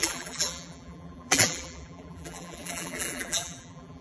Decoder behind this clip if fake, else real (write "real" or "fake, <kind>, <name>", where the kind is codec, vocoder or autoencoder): fake, vocoder, BigVGAN v2